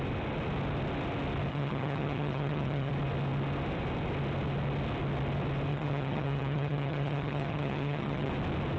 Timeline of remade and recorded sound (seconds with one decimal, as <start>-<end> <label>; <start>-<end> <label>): 0.0-1.5 recorded; 1.5-2.9 remade; 2.9-5.7 recorded; 5.7-8.3 remade; 8.3-8.8 recorded